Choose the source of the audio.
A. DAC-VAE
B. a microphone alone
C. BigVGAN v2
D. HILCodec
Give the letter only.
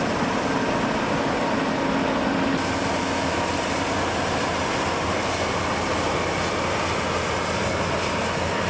B